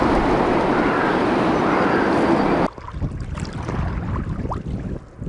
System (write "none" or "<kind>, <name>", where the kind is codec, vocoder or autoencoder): none